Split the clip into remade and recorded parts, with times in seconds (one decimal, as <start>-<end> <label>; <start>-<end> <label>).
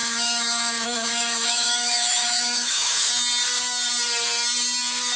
0.0-3.1 remade; 3.1-5.2 recorded